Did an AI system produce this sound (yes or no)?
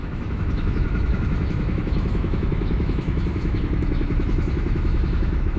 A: yes